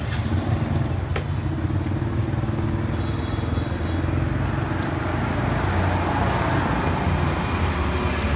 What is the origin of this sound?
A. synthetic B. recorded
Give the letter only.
B